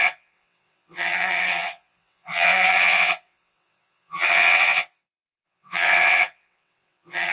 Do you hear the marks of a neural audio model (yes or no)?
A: yes